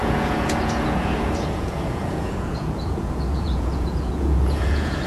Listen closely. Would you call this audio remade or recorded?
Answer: remade